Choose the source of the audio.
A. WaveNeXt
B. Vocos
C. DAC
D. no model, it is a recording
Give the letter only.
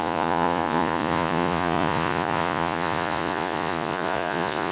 B